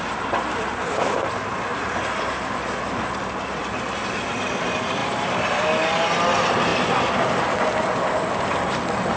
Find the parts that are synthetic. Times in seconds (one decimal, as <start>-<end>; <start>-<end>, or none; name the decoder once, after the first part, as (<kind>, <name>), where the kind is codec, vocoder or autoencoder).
0.8-1.9 (vocoder, BigVGAN v2); 5.0-5.6

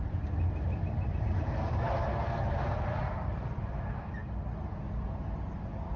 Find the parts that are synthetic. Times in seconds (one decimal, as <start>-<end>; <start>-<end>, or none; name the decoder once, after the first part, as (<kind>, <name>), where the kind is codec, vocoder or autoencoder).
none

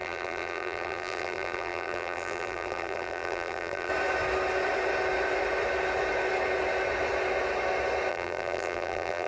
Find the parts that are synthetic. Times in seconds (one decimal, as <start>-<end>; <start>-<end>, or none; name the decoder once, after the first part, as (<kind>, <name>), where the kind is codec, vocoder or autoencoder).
0.0-3.9 (vocoder, BigVGAN v2); 8.1-9.3

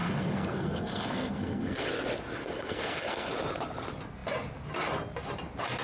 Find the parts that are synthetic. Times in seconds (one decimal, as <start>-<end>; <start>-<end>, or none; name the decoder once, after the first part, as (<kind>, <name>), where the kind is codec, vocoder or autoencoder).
0.0-1.9 (codec, SNAC); 2.4-3.3

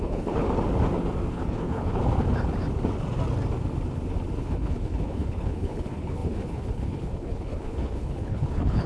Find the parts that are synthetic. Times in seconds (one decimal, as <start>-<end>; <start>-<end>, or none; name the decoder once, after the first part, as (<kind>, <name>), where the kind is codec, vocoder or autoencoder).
0.0-0.4 (codec, HILCodec); 1.3-2.0; 4.4-8.9

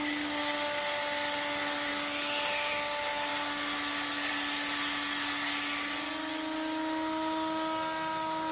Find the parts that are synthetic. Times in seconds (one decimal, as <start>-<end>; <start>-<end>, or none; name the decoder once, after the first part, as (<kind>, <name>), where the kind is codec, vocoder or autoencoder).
none

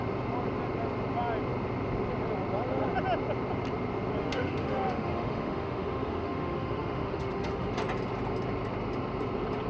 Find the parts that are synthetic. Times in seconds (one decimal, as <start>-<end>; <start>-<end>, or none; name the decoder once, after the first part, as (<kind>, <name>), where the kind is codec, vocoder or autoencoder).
4.2-7.7 (autoencoder, DAC-VAE)

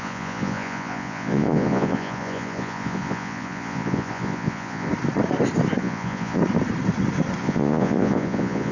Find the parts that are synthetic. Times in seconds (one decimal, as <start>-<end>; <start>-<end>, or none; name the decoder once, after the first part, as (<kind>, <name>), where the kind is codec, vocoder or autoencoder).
0.0-4.9 (vocoder, Vocos); 5.8-6.4; 7.4-8.7